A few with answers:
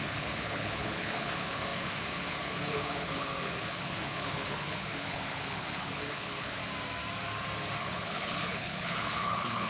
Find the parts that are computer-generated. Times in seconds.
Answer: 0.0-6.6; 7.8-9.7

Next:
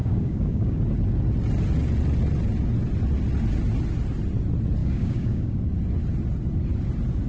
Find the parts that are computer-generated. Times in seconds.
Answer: 0.0-0.8; 4.8-5.6